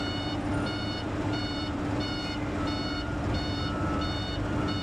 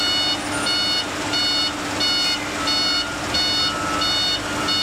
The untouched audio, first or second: second